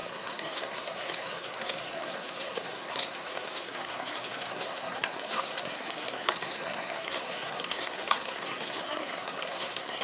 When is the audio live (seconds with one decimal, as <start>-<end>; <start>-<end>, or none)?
none

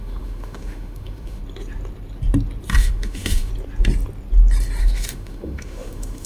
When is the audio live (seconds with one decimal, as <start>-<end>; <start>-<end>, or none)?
1.4-2.8; 3.5-4.8

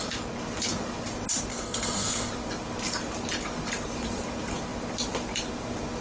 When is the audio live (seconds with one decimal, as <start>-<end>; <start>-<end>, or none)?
0.0-1.5; 2.3-6.0

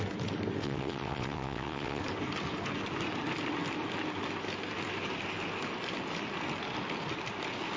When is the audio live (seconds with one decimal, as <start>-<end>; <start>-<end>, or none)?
0.0-0.6; 2.0-7.8

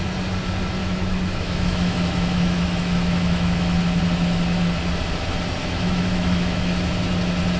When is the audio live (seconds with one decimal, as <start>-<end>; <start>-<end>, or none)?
0.0-0.8; 4.0-5.6; 6.9-7.6

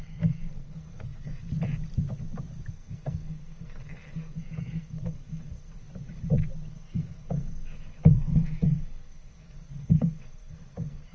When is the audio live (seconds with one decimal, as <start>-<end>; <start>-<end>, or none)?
1.4-2.7; 5.8-6.7

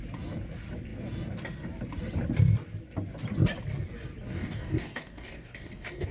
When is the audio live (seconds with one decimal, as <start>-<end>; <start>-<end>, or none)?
0.0-4.3